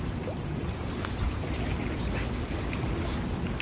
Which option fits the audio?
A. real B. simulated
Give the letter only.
A